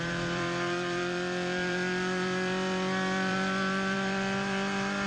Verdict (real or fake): fake